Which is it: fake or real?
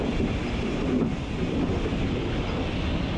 real